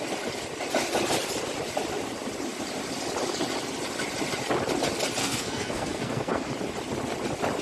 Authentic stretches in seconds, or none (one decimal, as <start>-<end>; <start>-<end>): 0.0-5.2; 6.5-7.6